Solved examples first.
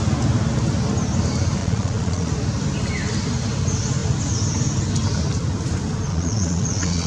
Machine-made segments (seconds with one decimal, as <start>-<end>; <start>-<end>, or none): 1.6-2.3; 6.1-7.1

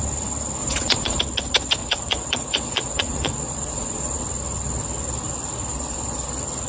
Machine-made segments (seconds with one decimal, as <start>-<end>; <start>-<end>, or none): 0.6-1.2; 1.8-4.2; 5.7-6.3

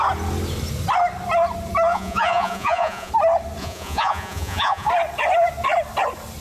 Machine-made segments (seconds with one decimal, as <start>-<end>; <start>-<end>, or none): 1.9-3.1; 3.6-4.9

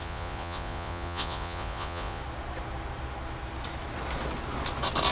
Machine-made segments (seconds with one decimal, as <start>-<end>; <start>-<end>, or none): 0.0-2.2

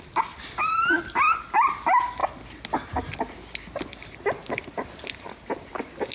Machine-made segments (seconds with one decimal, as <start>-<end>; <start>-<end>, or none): none

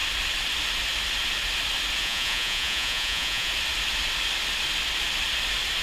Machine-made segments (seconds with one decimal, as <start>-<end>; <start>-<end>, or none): 2.0-3.5